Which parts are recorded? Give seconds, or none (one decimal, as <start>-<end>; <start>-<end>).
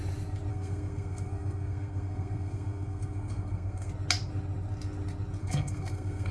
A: 0.0-0.5; 3.9-5.4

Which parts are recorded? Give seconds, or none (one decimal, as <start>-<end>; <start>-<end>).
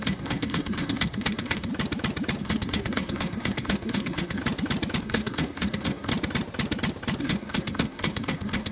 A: 1.7-2.4; 4.4-5.0; 6.1-7.2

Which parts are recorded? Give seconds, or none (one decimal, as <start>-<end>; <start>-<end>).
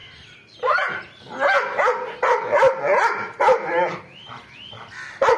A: 0.0-5.4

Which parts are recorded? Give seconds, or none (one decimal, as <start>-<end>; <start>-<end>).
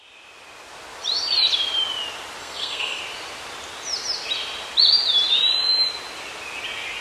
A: 0.0-2.4; 3.0-7.0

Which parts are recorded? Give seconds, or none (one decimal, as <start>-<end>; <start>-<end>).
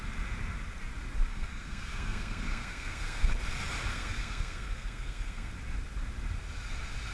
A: 0.0-1.3; 3.3-3.9; 5.5-7.1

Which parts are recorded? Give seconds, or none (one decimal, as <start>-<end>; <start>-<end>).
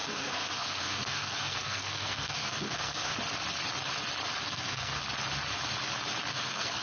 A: 3.1-4.5; 5.0-6.3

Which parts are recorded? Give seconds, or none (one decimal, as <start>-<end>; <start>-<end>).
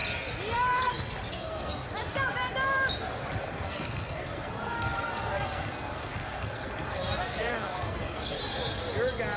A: 0.0-1.3; 1.9-3.4; 8.4-9.4